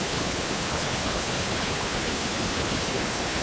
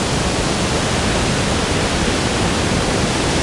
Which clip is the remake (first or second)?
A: first